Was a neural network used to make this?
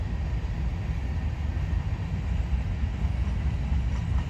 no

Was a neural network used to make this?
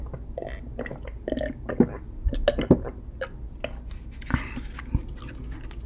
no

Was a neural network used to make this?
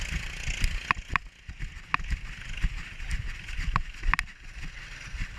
no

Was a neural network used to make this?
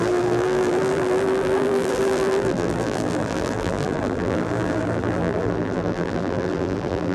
yes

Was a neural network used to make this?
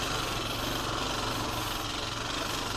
no